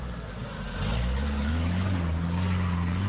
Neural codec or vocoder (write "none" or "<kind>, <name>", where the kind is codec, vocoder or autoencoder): none